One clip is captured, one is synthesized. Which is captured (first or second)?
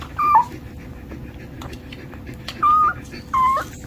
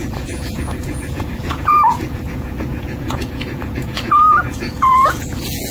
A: first